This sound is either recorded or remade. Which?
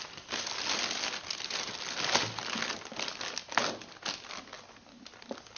recorded